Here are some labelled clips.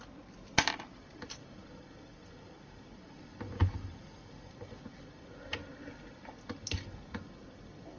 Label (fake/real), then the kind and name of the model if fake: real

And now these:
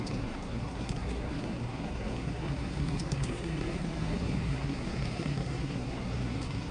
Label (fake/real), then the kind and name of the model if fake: fake, codec, SNAC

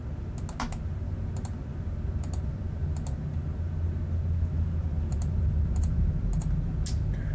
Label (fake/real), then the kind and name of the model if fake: real